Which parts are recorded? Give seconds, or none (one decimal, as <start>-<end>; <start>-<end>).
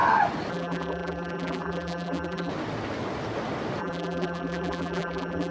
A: 0.0-0.5; 2.5-3.8